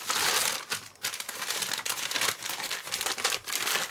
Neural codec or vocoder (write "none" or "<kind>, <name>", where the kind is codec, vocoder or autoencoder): none